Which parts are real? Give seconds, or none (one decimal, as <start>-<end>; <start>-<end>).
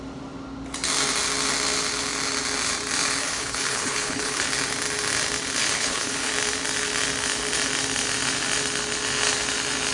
0.0-3.2; 4.5-5.6; 6.3-9.9